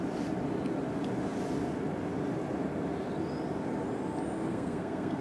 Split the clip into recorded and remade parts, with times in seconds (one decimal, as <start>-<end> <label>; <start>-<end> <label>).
0.0-4.5 recorded; 4.5-5.2 remade